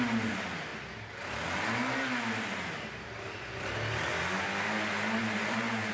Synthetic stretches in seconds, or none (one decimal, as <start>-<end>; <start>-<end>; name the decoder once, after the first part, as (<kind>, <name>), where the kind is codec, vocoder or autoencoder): 5.2-5.9 (vocoder, BigVGAN v2)